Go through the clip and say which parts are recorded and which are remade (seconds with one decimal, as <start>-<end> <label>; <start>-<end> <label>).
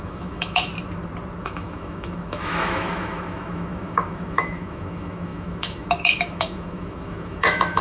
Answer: 0.0-0.7 remade; 0.7-1.4 recorded; 1.4-7.8 remade